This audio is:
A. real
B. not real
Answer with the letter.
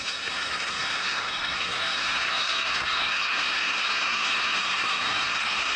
B